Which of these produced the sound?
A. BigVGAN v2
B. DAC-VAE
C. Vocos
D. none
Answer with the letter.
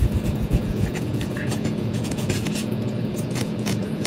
C